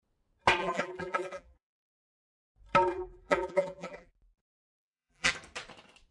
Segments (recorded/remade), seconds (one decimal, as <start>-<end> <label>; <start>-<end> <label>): 0.0-0.6 recorded; 0.6-1.9 remade; 1.9-2.9 recorded; 2.9-4.1 remade; 4.1-4.7 recorded; 4.7-5.3 remade; 5.3-6.1 recorded